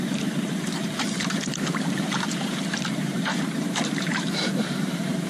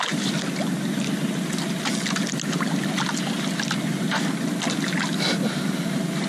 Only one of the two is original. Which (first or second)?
second